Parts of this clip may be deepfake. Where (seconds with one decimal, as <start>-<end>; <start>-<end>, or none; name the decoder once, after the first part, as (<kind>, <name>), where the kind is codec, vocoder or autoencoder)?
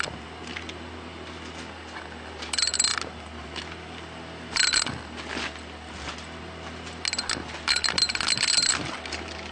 none